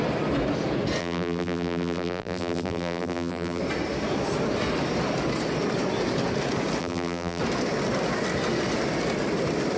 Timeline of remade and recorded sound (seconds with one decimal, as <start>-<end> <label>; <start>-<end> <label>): 0.0-1.0 recorded; 1.0-3.6 remade; 3.6-6.8 recorded; 6.8-7.4 remade; 7.4-9.8 recorded